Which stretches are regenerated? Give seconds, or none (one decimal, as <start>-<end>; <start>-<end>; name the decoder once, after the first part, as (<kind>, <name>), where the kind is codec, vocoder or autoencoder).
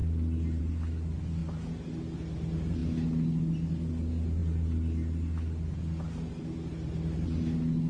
none